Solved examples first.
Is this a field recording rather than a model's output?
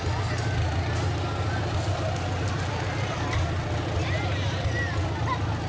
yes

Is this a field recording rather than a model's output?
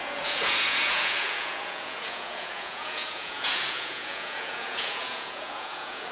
no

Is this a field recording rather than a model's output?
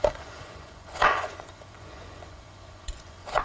no